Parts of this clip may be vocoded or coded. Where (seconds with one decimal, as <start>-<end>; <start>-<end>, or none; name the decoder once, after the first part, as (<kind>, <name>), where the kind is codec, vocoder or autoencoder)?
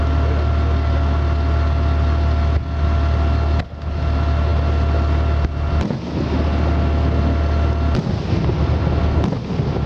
none